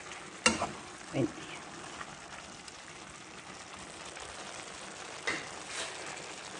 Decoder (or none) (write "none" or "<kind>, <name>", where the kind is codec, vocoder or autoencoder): none